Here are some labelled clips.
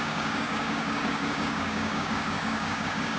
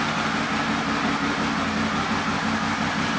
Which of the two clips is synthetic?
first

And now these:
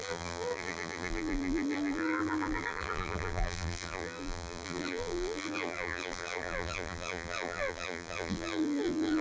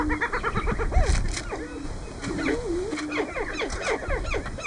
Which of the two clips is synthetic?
first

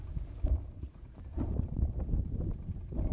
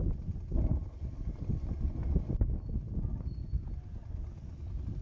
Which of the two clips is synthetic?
first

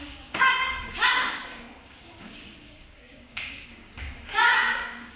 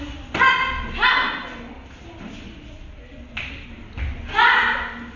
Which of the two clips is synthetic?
first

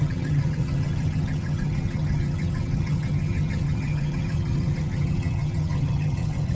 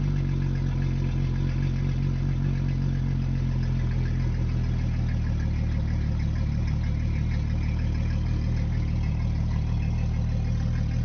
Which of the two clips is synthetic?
first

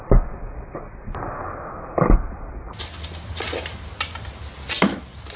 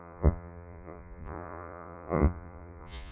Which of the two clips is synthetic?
second